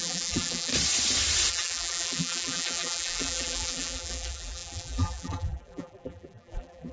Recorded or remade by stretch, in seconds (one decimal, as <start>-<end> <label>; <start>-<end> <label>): 0.0-0.7 remade; 0.7-1.5 recorded; 1.5-6.9 remade